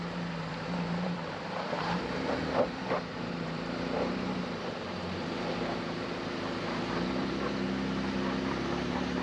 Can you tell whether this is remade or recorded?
remade